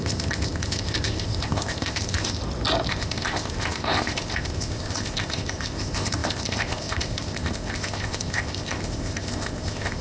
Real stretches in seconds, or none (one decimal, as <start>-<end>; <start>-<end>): 2.4-2.9